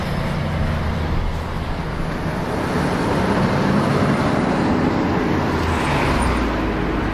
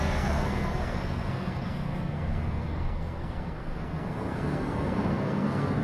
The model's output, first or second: second